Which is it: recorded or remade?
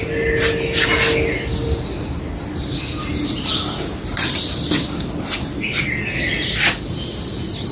recorded